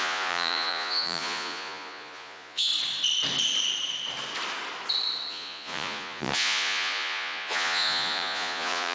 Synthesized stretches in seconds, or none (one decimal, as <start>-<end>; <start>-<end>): 0.0-2.7; 5.3-8.9